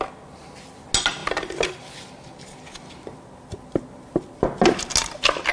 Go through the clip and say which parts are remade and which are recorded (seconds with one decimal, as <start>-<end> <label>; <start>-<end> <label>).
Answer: 0.0-5.5 recorded